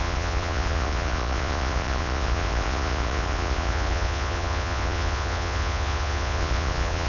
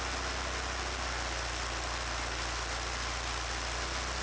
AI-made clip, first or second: first